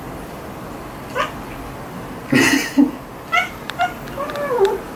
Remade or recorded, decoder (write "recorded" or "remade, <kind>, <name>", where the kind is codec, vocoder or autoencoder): remade, vocoder, BigVGAN v2